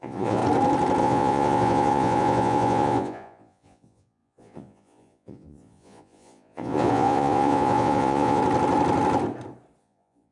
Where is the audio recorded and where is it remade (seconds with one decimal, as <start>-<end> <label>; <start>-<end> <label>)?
0.0-0.4 remade; 0.4-1.0 recorded; 1.0-8.4 remade; 8.4-9.8 recorded; 9.8-10.3 remade